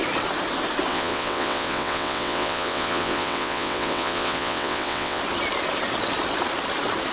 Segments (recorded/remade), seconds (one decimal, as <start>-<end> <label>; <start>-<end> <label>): 0.0-0.9 recorded; 0.9-5.2 remade; 5.2-7.1 recorded